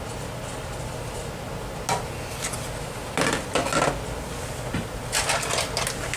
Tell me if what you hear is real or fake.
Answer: real